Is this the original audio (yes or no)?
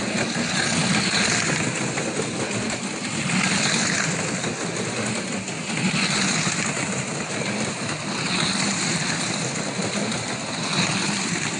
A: yes